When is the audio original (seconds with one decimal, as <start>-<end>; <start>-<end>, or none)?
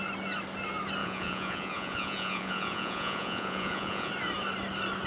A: 0.0-1.0; 4.1-5.1